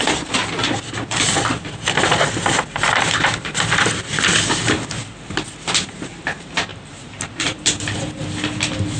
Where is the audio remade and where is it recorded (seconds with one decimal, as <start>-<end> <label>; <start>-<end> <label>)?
0.0-6.7 recorded; 6.7-8.0 remade; 8.0-9.0 recorded